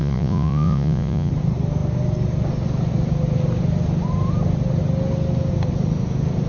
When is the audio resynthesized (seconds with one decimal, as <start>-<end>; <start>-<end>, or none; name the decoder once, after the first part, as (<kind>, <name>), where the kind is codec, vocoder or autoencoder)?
0.0-1.3 (vocoder, Vocos)